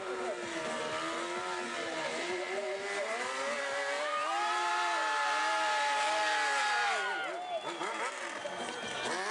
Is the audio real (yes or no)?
yes